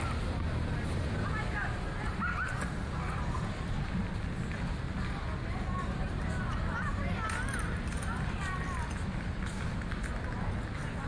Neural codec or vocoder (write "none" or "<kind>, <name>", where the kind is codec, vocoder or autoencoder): none